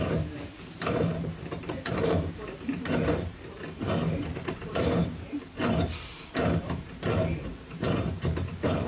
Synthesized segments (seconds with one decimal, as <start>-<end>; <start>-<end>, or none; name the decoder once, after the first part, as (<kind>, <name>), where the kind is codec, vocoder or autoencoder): 0.0-8.9 (vocoder, BigVGAN v2)